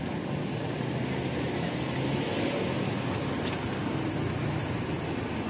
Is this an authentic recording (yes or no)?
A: yes